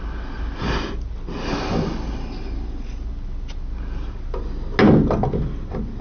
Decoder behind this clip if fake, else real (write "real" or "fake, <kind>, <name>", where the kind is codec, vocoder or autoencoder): real